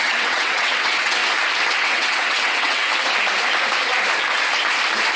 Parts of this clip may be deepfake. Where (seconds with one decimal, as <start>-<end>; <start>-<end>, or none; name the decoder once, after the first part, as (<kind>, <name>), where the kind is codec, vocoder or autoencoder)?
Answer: 0.0-1.2 (vocoder, WaveNeXt); 1.8-2.9